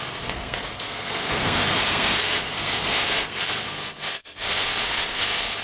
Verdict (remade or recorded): remade